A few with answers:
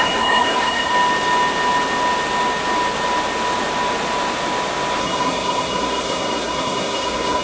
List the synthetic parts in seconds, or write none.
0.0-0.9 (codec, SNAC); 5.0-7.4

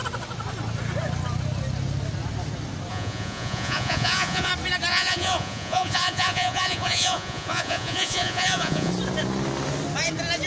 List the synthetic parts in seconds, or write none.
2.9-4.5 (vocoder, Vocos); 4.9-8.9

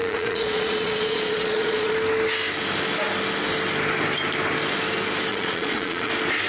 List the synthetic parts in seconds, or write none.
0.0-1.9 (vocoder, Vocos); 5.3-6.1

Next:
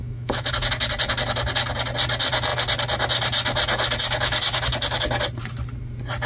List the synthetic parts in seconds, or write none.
0.0-0.5 (autoencoder, DAC-VAE)